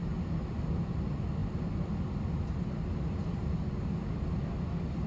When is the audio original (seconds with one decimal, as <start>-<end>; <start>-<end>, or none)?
0.9-5.1